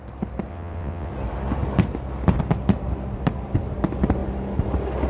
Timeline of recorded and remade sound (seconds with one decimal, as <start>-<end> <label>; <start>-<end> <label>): 0.0-0.5 recorded; 0.5-1.1 remade; 1.1-5.1 recorded